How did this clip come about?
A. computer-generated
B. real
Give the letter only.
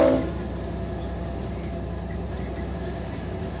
B